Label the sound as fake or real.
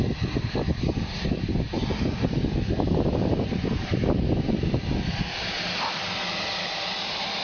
real